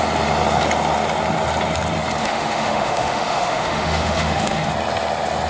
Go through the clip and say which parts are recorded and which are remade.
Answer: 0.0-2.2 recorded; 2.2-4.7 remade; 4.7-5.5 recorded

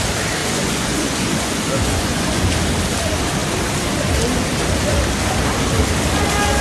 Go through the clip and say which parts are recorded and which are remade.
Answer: 0.0-0.4 recorded; 0.4-2.5 remade; 2.5-6.6 recorded

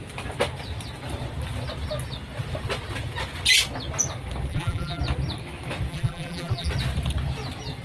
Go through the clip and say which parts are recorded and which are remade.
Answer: 0.0-4.5 recorded; 4.5-5.0 remade; 5.0-5.9 recorded; 5.9-6.7 remade; 6.7-7.8 recorded